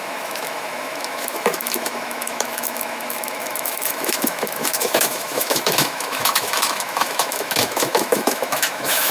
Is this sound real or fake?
fake